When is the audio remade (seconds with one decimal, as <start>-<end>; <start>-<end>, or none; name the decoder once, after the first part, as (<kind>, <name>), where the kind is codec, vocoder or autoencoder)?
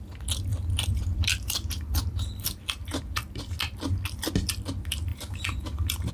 0.5-3.5 (vocoder, BigVGAN v2); 5.1-6.1